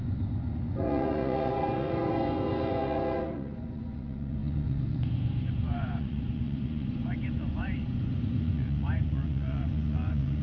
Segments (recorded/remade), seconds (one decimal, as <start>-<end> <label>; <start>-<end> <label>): 0.0-10.4 remade